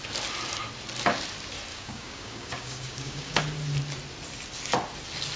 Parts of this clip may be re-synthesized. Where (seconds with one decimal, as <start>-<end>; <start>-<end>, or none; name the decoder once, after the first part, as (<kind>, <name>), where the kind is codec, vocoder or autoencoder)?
1.7-3.4 (codec, DAC)